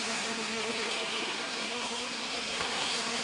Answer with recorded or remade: remade